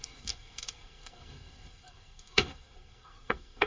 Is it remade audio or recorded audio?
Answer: remade